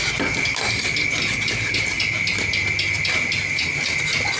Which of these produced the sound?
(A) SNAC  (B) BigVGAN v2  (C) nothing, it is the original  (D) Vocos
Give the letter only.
C